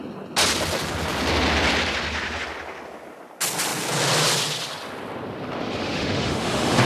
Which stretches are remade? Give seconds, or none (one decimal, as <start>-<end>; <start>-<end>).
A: 5.8-6.8